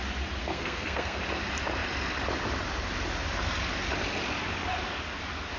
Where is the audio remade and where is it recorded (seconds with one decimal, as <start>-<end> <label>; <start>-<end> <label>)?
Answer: 0.0-0.4 recorded; 0.4-1.2 remade; 1.2-5.6 recorded